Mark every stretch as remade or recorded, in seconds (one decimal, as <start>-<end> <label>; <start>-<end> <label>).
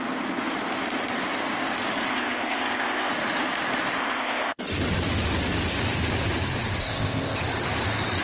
0.0-2.1 recorded; 2.1-3.1 remade; 3.1-4.0 recorded; 4.0-4.6 remade; 4.6-6.8 recorded; 6.8-7.4 remade; 7.4-8.2 recorded